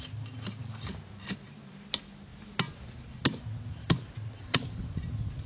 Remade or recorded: recorded